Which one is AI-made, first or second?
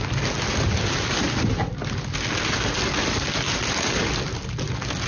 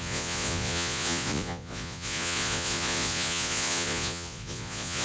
second